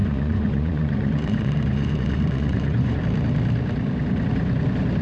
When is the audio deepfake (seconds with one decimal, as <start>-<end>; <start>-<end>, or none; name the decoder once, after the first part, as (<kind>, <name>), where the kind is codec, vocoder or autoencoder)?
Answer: 0.0-3.0 (vocoder, Vocos)